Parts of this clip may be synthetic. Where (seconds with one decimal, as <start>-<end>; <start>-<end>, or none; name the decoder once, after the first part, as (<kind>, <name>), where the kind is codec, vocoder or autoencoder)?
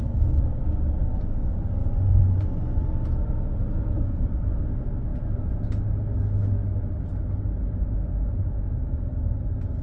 1.8-2.9 (vocoder, Vocos)